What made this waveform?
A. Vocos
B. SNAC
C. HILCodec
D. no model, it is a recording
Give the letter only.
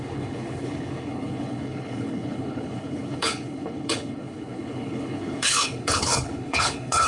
C